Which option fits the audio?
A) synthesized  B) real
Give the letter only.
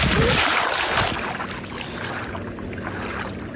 B